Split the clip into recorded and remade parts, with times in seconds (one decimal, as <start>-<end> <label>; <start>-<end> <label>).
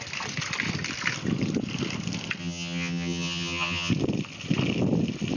0.0-2.4 recorded; 2.4-3.9 remade; 3.9-5.4 recorded